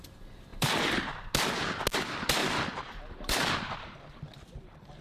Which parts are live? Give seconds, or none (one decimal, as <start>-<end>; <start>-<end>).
0.0-0.5; 1.3-2.4; 3.5-5.0